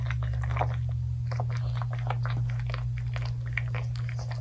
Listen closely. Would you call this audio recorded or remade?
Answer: recorded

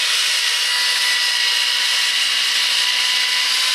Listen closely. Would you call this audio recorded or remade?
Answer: recorded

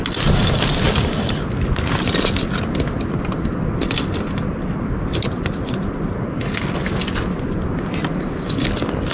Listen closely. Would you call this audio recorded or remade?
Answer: recorded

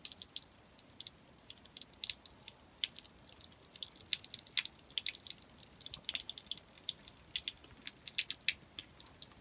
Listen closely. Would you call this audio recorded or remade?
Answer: recorded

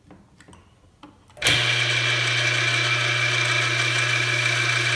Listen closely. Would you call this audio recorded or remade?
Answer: recorded